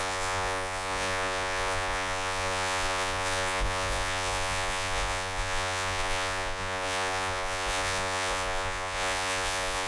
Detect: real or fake fake